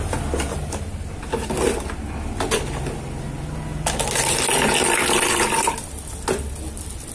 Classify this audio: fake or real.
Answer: real